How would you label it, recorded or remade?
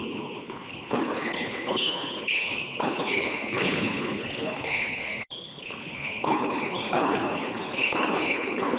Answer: remade